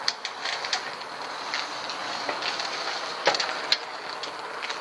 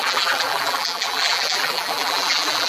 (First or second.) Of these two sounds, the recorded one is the first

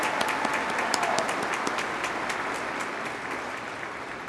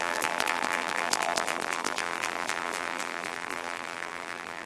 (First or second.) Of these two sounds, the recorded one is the first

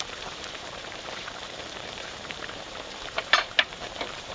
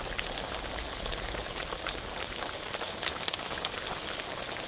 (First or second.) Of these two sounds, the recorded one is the second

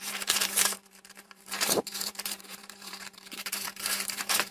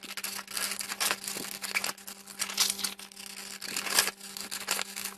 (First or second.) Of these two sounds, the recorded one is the second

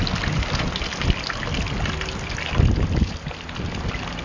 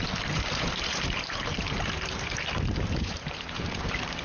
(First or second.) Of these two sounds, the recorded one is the first